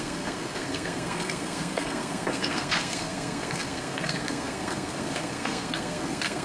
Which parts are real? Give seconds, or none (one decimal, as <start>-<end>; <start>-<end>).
none